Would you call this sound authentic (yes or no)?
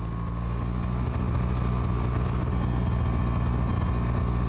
yes